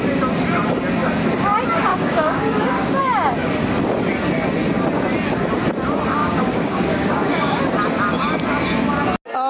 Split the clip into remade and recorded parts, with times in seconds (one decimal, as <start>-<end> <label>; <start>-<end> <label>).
0.0-1.9 recorded; 1.9-3.0 remade; 3.0-6.2 recorded; 6.2-7.6 remade; 7.6-9.5 recorded